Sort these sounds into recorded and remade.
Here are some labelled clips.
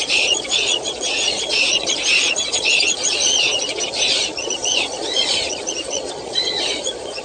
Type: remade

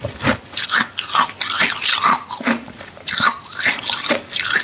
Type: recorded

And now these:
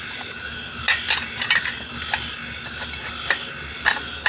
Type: recorded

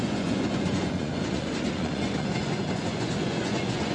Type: remade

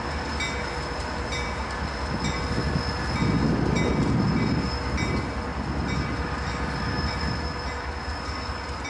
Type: recorded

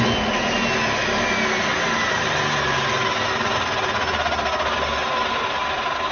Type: recorded